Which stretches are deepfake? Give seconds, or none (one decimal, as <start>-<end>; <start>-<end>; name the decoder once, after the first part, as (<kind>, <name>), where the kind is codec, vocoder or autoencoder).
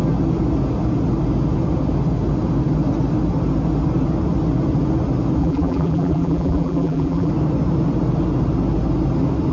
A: 5.4-7.3 (vocoder, BigVGAN v2)